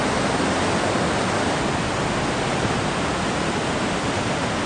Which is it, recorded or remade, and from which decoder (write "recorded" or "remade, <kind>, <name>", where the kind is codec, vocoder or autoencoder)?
recorded